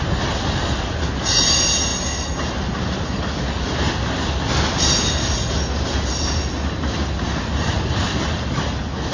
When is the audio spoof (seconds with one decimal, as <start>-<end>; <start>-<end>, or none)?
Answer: none